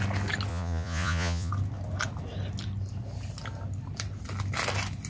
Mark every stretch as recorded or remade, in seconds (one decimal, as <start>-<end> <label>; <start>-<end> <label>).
0.0-0.5 recorded; 0.5-1.5 remade; 1.5-5.1 recorded